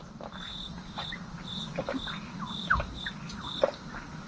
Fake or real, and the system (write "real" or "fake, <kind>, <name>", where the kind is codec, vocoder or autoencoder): real